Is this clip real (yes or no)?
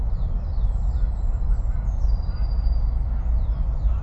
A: yes